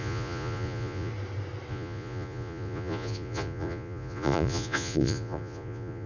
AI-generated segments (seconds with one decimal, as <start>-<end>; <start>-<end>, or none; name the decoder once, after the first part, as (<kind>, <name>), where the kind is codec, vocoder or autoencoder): 0.0-1.1 (vocoder, Vocos); 1.7-6.1

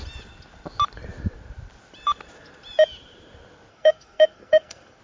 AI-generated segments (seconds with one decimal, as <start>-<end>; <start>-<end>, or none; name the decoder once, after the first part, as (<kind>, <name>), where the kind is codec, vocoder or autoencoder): 3.7-5.0 (codec, SNAC)

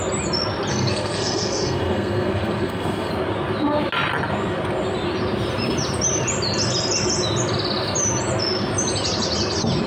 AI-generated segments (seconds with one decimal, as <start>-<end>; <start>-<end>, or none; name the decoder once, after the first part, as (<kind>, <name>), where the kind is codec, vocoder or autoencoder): 0.7-3.1 (codec, SNAC)